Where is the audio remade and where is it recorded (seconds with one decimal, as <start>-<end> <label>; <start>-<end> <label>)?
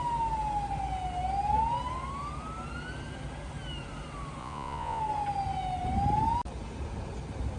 0.0-4.4 recorded; 4.4-5.0 remade; 5.0-7.6 recorded